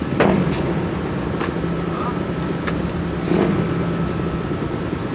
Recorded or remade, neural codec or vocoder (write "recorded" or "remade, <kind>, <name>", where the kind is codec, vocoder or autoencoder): recorded